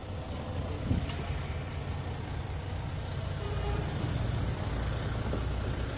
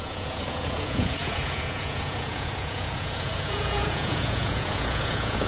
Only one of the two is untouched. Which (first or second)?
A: first